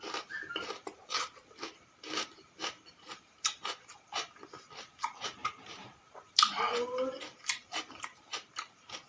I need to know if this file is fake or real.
fake